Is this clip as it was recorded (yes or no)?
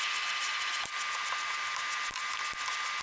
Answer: yes